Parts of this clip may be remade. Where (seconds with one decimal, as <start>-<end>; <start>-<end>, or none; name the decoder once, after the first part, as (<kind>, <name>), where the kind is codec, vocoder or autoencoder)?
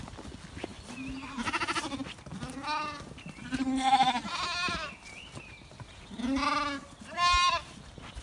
none